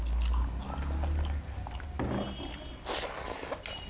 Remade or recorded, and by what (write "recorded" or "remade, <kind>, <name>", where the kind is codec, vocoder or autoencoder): recorded